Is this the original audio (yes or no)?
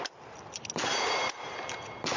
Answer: yes